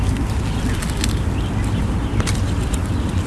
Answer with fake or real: real